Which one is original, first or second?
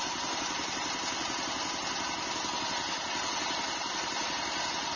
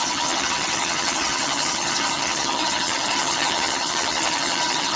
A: first